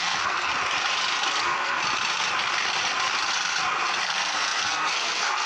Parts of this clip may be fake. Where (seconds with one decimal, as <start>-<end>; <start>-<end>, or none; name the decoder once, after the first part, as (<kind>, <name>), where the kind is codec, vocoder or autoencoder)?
0.0-0.5 (codec, SNAC); 1.3-1.8; 4.0-5.5